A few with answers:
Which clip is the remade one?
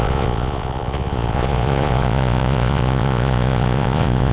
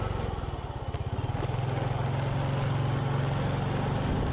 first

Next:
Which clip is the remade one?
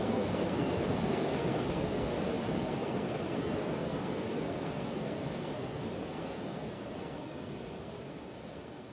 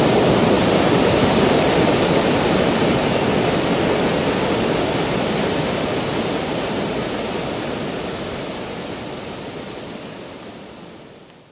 first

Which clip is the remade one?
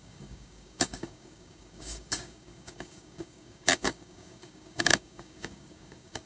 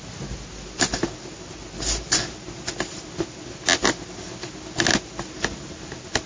first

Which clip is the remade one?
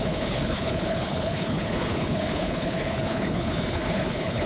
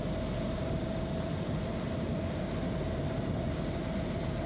first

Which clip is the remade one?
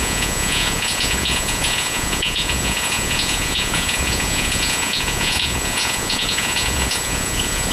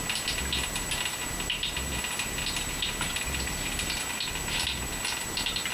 first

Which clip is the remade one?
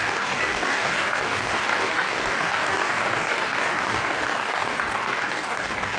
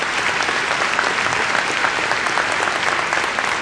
first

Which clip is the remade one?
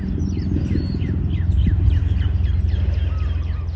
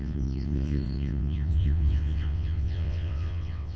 second